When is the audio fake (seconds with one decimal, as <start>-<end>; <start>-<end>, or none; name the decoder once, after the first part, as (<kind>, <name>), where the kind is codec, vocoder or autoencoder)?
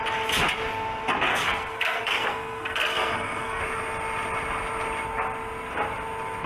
1.3-3.6 (codec, SNAC)